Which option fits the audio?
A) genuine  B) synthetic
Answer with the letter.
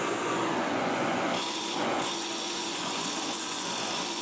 B